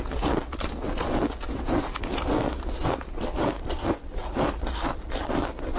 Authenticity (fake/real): real